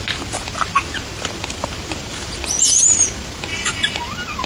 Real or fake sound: real